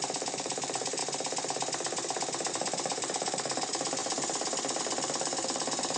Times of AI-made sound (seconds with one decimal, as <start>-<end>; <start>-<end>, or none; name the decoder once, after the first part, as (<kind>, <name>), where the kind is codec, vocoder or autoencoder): 0.0-1.0 (vocoder, BigVGAN v2); 2.5-4.0; 4.8-6.0